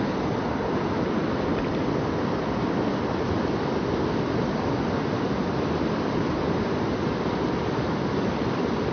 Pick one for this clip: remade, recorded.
recorded